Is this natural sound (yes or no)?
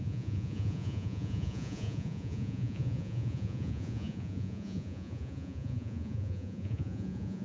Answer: no